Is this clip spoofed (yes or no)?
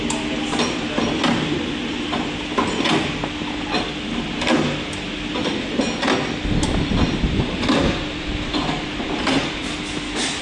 no